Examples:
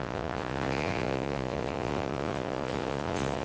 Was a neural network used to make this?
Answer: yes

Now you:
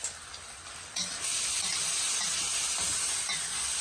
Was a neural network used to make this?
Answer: no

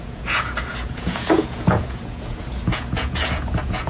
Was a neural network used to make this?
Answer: yes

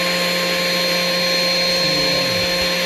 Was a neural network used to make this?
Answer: no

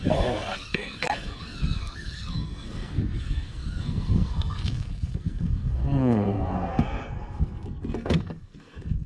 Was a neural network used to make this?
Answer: yes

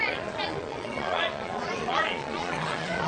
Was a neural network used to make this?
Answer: yes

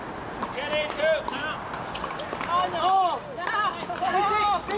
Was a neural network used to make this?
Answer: no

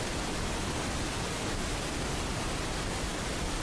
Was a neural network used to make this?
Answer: no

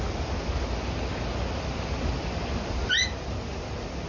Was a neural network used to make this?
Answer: no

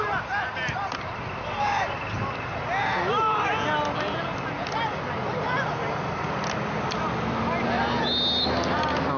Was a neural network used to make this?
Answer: no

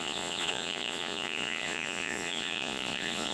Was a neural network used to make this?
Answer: yes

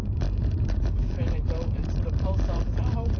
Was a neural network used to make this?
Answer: yes